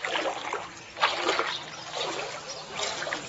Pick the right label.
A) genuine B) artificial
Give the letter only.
A